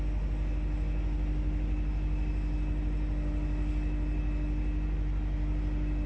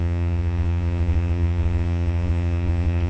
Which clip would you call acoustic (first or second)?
first